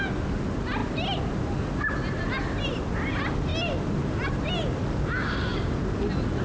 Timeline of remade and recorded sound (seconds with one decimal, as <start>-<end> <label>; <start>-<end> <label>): 0.0-6.4 recorded